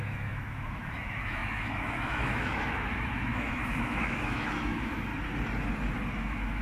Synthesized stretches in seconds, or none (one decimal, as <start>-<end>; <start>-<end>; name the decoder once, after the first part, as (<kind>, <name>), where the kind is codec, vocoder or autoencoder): 0.0-5.1 (autoencoder, DAC-VAE); 6.1-6.6